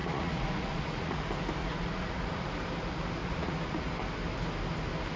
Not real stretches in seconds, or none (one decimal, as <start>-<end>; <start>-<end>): 0.0-1.2; 1.6-2.5; 3.2-3.9